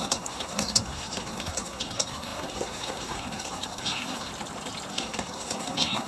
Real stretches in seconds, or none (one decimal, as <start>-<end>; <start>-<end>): 4.3-4.9